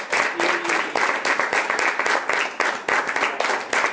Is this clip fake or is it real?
real